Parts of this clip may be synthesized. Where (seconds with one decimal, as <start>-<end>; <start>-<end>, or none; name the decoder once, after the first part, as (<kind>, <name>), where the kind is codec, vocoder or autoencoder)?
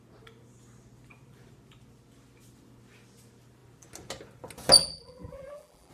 4.8-5.9 (vocoder, BigVGAN v2)